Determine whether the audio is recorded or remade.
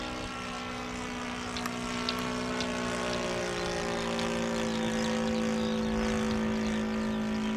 recorded